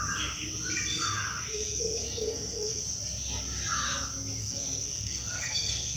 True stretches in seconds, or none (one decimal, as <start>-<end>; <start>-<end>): 0.0-1.5; 2.8-4.4